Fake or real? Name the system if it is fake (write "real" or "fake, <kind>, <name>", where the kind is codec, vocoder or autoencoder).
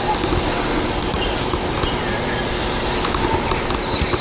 real